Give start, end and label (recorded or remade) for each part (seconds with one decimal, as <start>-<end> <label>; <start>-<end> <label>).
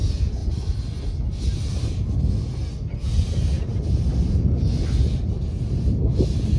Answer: 0.0-6.6 recorded